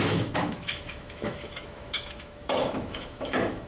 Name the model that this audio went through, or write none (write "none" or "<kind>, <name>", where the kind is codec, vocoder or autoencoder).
autoencoder, DAC-VAE